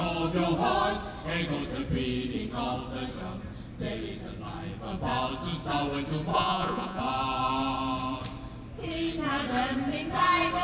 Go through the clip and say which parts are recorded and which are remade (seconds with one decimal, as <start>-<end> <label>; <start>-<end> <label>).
0.0-6.3 recorded; 6.3-7.0 remade; 7.0-10.6 recorded